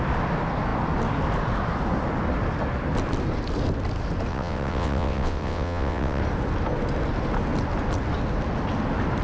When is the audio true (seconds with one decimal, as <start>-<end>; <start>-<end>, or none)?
0.0-4.3; 6.2-9.2